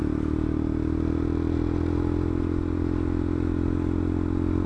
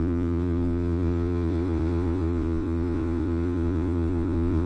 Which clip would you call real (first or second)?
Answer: first